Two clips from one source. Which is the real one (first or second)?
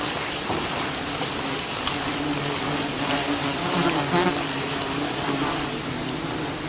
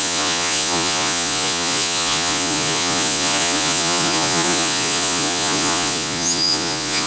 first